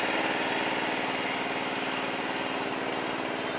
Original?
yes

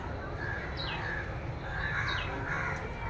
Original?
yes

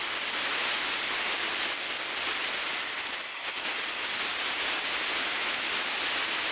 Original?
yes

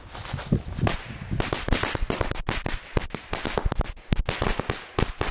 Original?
yes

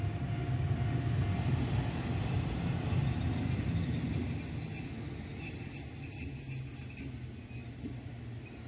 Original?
yes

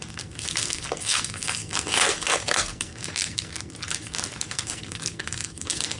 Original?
no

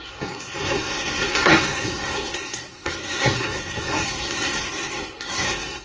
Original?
no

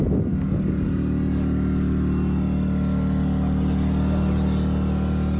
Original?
yes